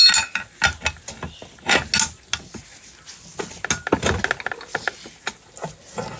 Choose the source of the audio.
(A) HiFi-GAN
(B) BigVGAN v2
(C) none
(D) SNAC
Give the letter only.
C